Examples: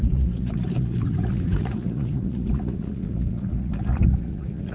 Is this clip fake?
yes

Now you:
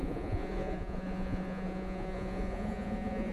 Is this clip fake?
yes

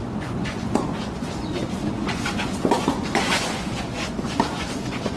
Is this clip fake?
yes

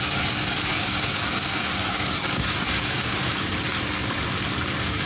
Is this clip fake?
yes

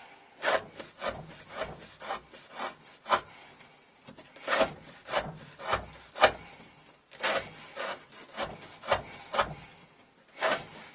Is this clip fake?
no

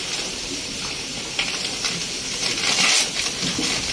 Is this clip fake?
no